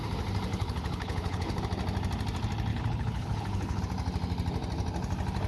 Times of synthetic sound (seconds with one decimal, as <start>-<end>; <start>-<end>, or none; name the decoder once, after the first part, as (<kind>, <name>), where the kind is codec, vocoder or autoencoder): 0.5-1.6 (codec, HILCodec); 2.7-3.8

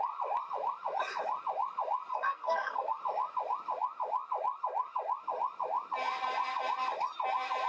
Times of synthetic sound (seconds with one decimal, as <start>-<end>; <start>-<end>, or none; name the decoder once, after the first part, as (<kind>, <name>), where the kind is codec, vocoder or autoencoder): 2.1-3.0 (codec, SNAC)